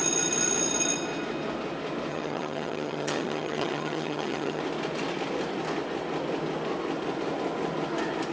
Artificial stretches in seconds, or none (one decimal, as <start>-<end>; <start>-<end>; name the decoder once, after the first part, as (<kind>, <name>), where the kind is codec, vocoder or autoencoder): 2.1-4.6 (vocoder, HiFi-GAN)